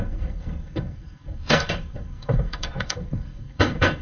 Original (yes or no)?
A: no